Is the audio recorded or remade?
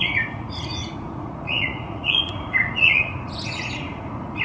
remade